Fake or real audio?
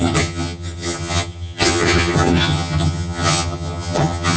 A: fake